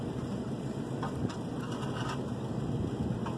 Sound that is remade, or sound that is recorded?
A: recorded